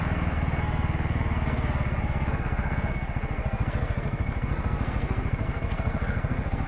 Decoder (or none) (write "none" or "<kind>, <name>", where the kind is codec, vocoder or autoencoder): codec, SNAC